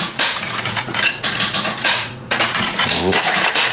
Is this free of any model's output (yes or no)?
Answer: no